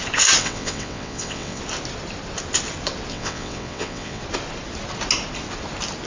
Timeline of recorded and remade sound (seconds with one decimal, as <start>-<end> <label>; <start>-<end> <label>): 0.0-0.4 recorded; 0.4-1.6 remade; 1.6-3.1 recorded; 3.1-4.2 remade; 4.2-6.1 recorded